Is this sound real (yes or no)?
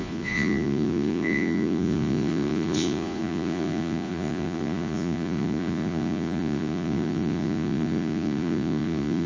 no